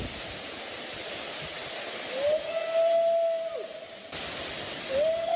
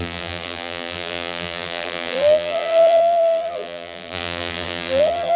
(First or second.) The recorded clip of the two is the first